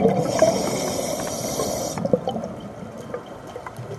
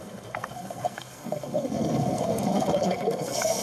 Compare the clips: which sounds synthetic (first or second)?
second